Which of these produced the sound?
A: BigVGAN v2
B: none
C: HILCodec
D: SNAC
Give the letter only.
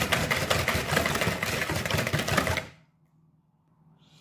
B